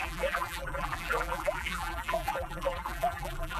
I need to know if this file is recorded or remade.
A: remade